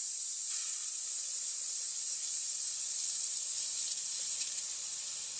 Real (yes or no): no